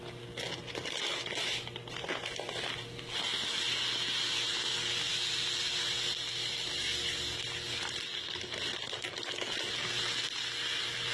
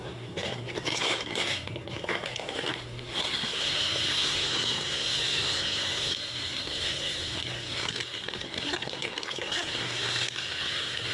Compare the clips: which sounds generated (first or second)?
second